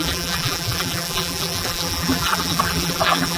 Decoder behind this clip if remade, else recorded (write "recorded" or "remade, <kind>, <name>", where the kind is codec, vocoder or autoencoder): remade, vocoder, BigVGAN v2